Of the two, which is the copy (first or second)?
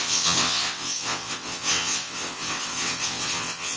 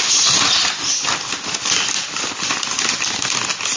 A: first